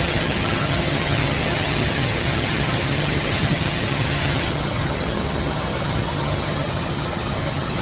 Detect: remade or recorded remade